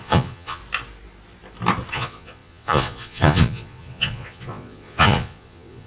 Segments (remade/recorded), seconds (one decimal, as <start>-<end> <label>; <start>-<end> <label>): 0.0-0.6 remade; 0.6-1.9 recorded; 1.9-5.9 remade